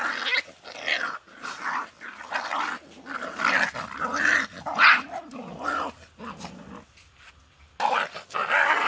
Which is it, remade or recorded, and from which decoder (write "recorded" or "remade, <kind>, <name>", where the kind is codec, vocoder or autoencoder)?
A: recorded